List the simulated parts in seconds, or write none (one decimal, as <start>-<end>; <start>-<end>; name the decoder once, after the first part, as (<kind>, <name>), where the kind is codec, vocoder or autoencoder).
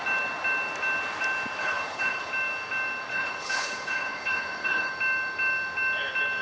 1.6-2.3 (codec, HILCodec); 3.1-4.9